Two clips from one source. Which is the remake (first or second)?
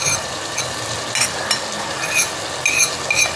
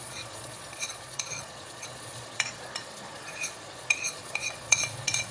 second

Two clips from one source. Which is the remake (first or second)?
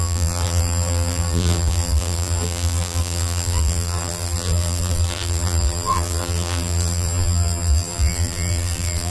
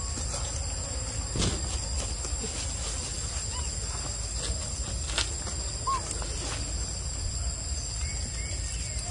first